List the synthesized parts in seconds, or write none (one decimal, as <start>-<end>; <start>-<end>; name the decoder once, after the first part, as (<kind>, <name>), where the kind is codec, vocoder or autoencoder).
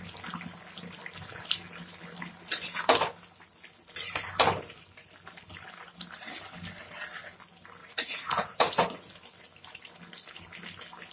7.8-9.1 (vocoder, Vocos)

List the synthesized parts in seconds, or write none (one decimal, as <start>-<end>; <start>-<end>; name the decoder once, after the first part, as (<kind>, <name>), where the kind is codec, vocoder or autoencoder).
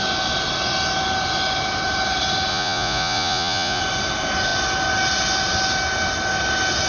2.5-3.8 (vocoder, Vocos)